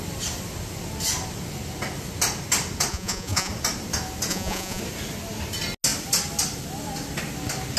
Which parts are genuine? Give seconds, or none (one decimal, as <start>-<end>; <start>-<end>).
0.0-2.9; 3.5-4.3; 4.8-7.8